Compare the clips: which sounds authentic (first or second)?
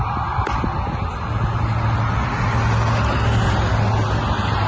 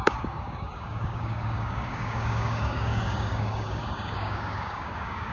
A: first